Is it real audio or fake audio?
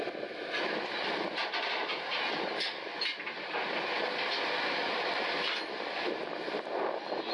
real